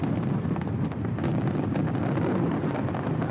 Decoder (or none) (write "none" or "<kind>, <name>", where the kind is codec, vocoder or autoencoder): none